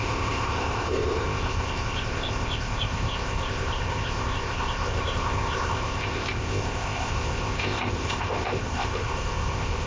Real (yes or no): no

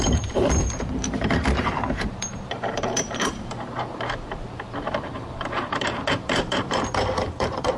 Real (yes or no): no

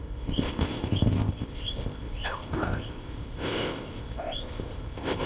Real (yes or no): no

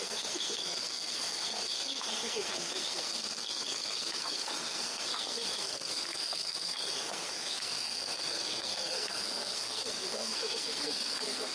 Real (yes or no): no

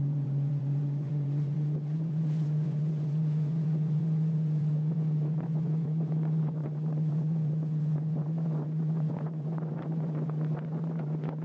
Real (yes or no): no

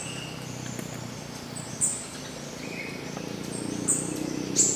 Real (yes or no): yes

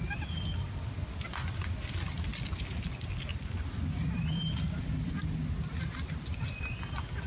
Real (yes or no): yes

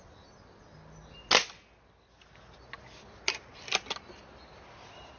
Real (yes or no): yes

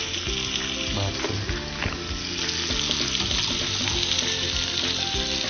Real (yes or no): yes